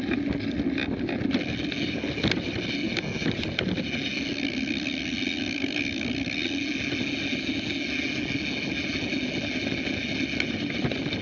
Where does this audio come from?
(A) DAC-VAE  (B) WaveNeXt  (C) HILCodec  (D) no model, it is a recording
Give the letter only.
D